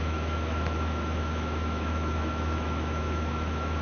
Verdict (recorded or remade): remade